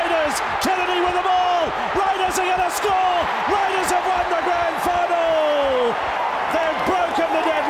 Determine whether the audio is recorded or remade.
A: recorded